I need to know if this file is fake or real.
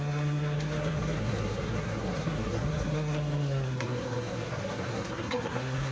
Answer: fake